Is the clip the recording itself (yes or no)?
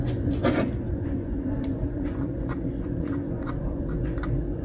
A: no